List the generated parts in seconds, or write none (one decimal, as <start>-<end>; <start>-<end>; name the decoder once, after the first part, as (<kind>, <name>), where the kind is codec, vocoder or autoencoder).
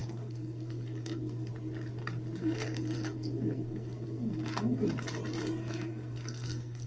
0.0-1.5 (codec, SNAC); 2.4-4.8; 5.6-6.9